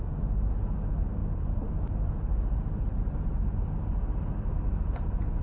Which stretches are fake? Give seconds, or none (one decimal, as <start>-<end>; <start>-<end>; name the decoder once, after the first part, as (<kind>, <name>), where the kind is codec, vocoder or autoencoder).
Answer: none